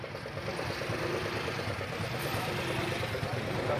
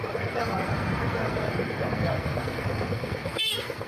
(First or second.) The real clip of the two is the first